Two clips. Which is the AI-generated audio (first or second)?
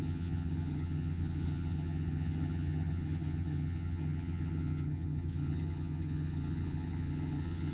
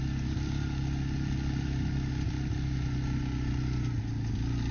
first